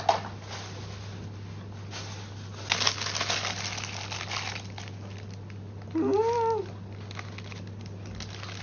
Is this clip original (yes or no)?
yes